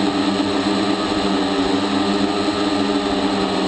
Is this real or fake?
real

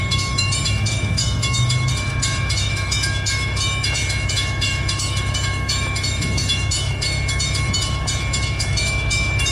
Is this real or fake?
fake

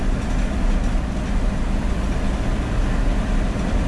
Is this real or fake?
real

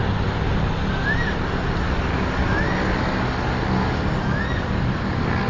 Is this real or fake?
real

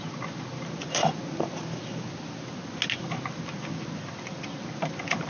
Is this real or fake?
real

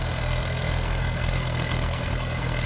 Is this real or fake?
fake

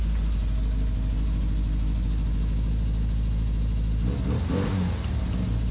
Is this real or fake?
real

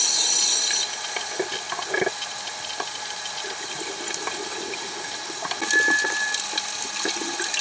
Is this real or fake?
real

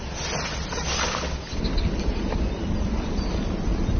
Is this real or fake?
real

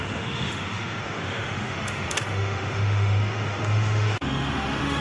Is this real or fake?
fake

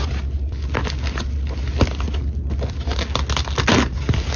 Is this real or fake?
real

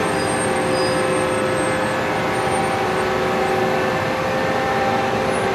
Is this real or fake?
real